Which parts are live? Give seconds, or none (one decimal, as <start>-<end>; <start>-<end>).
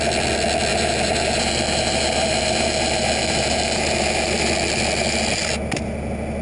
0.0-0.7; 4.5-6.4